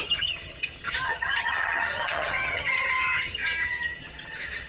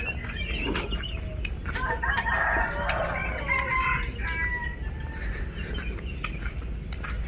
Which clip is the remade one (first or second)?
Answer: first